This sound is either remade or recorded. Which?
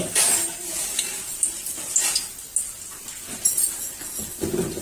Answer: recorded